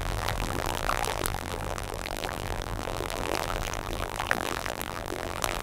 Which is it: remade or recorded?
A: remade